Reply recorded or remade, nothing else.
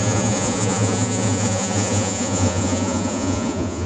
remade